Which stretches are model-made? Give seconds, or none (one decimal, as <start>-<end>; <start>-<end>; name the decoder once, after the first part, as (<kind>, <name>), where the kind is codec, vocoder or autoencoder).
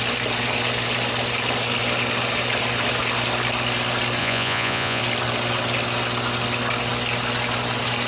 4.2-5.0 (vocoder, Vocos)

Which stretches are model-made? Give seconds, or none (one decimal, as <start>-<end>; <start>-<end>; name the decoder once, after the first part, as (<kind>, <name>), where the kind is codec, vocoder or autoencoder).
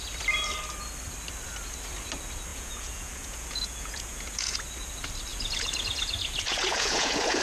2.5-4.6 (vocoder, Vocos); 5.3-7.4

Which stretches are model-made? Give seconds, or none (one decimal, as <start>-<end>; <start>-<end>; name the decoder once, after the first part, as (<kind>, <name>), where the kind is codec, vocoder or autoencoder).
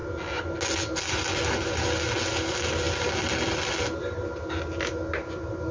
none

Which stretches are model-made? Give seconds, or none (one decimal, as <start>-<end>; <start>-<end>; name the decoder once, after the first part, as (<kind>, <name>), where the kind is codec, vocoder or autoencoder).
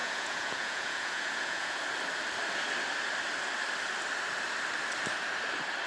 0.0-1.8 (vocoder, Vocos)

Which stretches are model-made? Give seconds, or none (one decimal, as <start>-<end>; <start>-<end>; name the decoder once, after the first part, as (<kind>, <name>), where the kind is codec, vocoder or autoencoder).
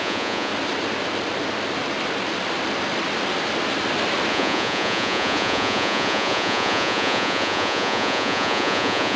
0.0-0.5 (vocoder, Vocos); 4.3-9.2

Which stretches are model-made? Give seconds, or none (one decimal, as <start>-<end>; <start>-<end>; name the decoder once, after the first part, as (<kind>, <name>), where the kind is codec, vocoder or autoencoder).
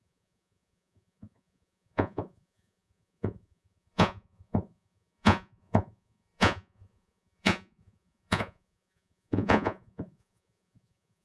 0.0-11.2 (vocoder, Vocos)